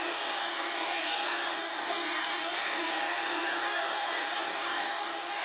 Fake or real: fake